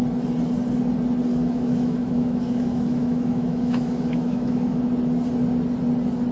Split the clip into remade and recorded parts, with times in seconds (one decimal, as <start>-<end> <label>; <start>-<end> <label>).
0.0-1.3 recorded; 1.3-4.8 remade; 4.8-6.3 recorded